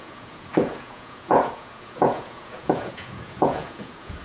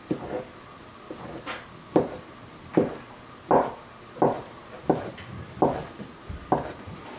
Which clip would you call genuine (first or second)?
second